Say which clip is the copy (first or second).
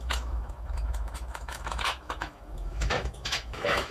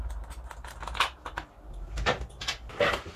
first